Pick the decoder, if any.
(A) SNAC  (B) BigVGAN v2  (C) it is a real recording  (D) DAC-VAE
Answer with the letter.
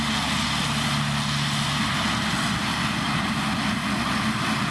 C